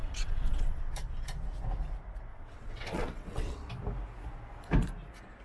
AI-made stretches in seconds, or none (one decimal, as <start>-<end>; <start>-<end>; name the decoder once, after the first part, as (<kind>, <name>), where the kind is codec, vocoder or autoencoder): 0.0-0.8 (vocoder, WaveNeXt); 2.3-3.7